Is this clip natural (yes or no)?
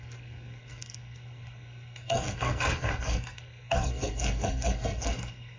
no